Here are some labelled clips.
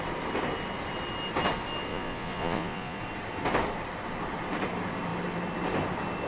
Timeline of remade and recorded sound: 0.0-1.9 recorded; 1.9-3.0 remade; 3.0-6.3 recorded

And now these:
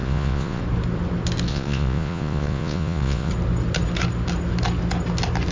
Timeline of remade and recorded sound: 0.0-0.6 remade; 0.6-1.5 recorded; 1.5-3.3 remade; 3.3-5.5 recorded